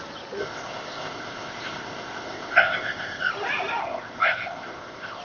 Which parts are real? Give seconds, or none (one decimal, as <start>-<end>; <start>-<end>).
0.0-0.4; 3.3-3.8